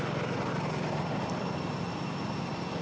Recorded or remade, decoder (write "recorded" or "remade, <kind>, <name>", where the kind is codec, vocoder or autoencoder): recorded